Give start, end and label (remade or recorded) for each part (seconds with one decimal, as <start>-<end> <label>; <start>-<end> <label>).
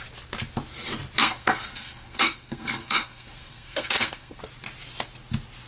0.0-1.2 recorded; 1.2-4.4 remade; 4.4-5.7 recorded